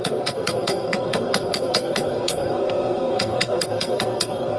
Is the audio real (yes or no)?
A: no